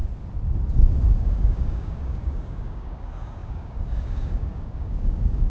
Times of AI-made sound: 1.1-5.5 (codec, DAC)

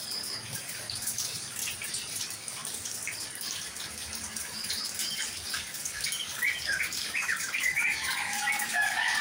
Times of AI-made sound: 0.0-1.6 (codec, DAC); 2.2-9.2

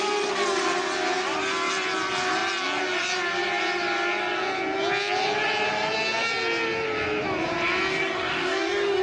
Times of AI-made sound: 7.9-9.0 (codec, DAC)

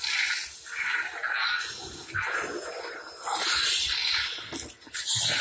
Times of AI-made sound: none

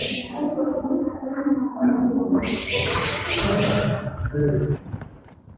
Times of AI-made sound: 0.0-3.4 (codec, DAC)

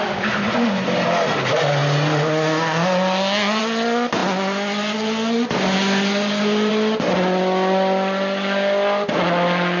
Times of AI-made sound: none